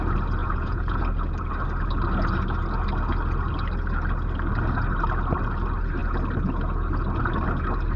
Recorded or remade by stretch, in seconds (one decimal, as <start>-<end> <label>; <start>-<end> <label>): 0.0-0.4 recorded; 0.4-1.0 remade; 1.0-8.0 recorded